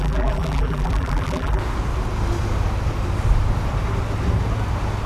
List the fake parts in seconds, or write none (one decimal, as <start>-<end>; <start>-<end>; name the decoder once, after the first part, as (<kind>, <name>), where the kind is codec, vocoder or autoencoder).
0.0-1.6 (vocoder, BigVGAN v2)